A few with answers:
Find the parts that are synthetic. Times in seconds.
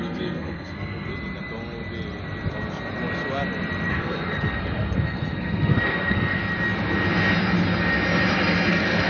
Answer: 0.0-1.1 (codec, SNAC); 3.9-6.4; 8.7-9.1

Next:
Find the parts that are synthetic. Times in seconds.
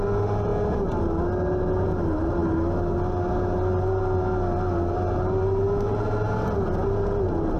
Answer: none